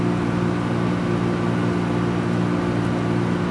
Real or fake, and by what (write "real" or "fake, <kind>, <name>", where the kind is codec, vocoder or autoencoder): real